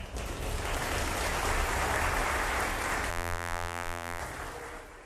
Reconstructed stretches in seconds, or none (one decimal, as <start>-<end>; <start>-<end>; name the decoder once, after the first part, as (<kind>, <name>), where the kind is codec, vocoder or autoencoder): 3.1-4.2 (vocoder, BigVGAN v2)